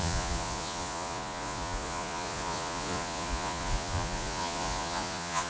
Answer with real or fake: fake